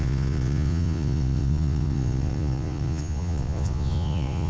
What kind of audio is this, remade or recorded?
remade